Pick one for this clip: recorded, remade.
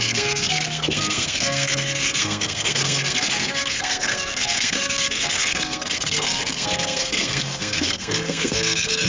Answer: remade